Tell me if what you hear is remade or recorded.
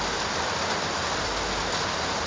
recorded